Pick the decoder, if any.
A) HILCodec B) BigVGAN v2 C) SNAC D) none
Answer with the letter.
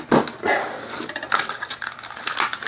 D